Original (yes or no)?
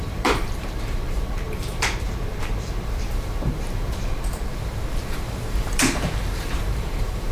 no